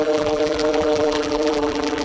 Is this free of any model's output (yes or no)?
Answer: no